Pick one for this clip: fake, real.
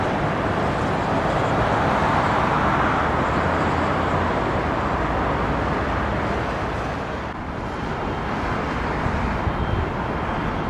real